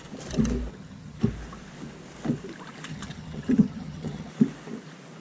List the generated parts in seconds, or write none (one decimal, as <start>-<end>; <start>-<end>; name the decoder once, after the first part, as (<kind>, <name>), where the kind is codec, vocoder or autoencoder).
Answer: 0.7-1.2 (vocoder, HiFi-GAN); 2.9-4.3